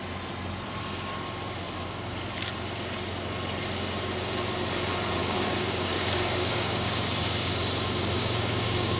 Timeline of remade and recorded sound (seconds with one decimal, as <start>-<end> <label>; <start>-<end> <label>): 0.0-5.2 recorded; 5.2-7.5 remade; 7.5-8.2 recorded; 8.2-9.0 remade